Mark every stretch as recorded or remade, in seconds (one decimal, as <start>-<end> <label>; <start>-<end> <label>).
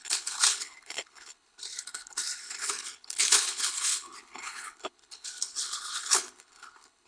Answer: 0.0-7.1 remade